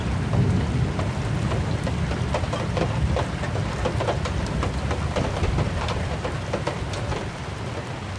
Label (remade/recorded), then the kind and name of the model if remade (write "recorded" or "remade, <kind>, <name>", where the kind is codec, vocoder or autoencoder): recorded